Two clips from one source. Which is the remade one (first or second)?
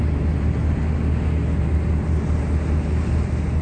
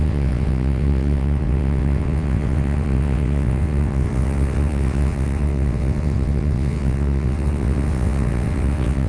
second